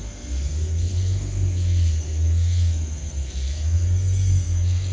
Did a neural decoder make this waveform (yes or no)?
yes